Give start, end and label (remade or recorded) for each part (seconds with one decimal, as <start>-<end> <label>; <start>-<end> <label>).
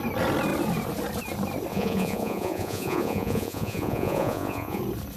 0.0-1.7 recorded; 1.7-4.8 remade; 4.8-5.2 recorded